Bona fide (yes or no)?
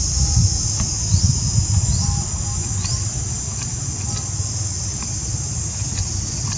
yes